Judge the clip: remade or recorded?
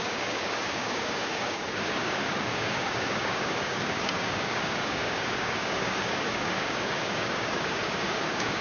remade